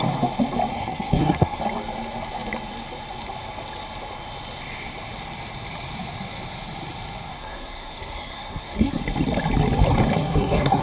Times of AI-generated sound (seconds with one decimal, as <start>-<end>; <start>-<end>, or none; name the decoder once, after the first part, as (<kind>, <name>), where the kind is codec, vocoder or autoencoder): 0.7-1.6 (codec, SNAC); 7.3-9.0; 10.1-10.8